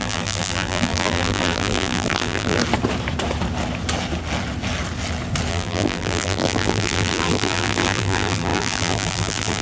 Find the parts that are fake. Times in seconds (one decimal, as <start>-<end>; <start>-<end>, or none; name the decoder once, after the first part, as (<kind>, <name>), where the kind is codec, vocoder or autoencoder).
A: 0.0-2.6 (vocoder, BigVGAN v2); 5.5-9.6